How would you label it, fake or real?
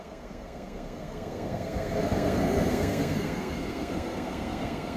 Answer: fake